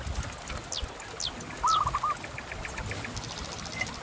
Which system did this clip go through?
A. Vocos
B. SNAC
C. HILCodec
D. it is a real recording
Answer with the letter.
D